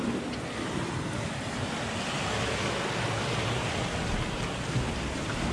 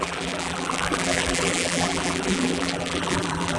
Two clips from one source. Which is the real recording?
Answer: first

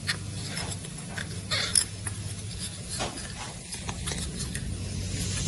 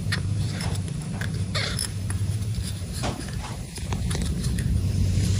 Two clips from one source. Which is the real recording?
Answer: first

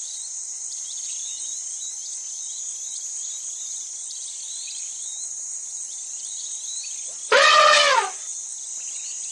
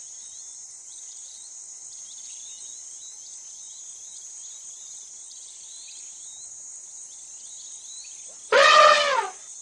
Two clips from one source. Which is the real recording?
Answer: second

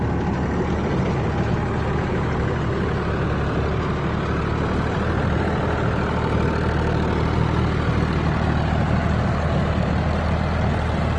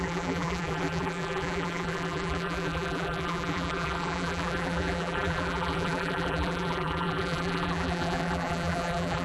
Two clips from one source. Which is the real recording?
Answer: first